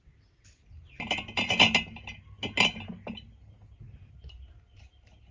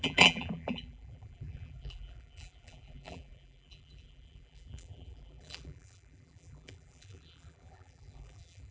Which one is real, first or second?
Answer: first